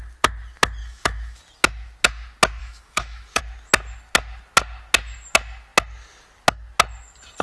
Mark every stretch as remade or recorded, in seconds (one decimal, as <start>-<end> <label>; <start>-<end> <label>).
0.0-0.8 recorded; 0.8-1.4 remade; 1.4-2.6 recorded; 2.6-3.4 remade; 3.4-7.4 recorded